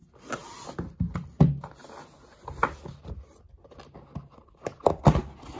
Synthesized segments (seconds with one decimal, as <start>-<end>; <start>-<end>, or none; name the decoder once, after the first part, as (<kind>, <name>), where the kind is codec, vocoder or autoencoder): none